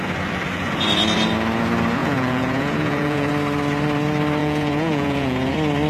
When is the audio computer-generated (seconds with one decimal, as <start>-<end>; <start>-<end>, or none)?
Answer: 2.0-3.3; 4.4-5.5